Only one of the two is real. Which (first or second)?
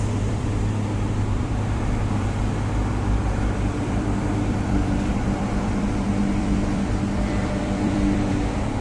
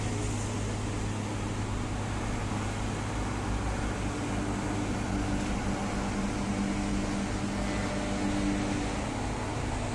second